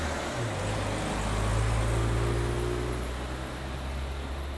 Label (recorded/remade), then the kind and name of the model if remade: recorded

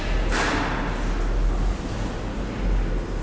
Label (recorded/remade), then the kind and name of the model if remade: recorded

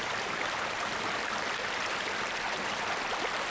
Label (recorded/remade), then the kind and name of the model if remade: recorded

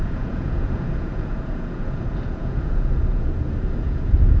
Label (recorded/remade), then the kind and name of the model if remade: remade, vocoder, Vocos